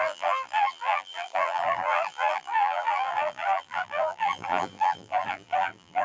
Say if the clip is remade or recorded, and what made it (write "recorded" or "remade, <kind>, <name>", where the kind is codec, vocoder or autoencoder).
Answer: remade, vocoder, BigVGAN v2